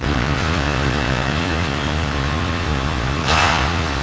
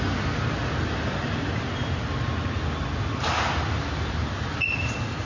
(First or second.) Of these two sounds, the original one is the second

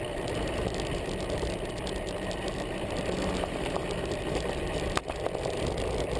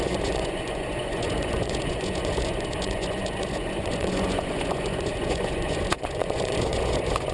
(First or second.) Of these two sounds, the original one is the first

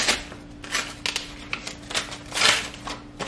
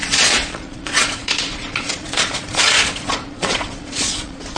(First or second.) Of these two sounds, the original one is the first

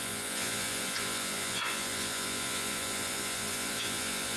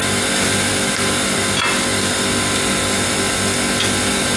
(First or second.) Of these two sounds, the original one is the second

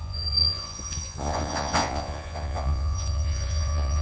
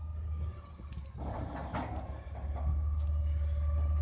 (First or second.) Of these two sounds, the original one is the second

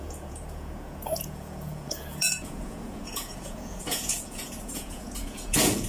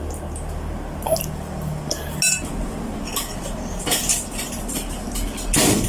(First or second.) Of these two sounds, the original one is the second